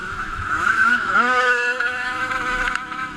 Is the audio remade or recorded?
remade